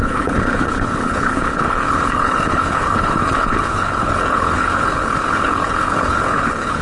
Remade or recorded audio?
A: remade